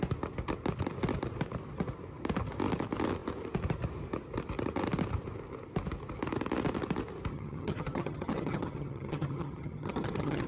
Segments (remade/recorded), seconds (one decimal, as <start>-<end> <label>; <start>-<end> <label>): 0.0-7.3 recorded; 7.3-10.5 remade